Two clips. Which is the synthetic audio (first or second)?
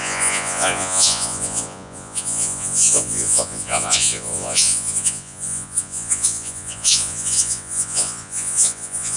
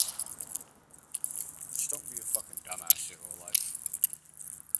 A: first